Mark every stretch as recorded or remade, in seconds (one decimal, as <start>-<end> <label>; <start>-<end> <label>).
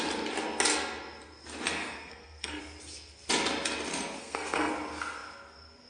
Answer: 0.0-1.8 recorded; 1.8-2.6 remade; 2.6-4.2 recorded; 4.2-4.7 remade; 4.7-5.9 recorded